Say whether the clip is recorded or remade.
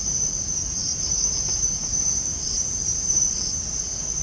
remade